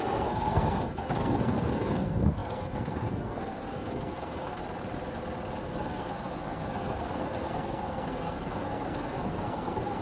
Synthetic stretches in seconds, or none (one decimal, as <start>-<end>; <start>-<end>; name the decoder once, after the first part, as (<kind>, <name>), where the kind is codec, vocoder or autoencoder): 0.0-4.6 (codec, SNAC); 5.6-10.0